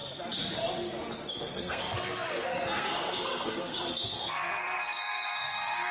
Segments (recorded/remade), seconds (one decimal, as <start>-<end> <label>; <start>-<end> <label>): 0.0-1.3 recorded; 1.3-5.9 remade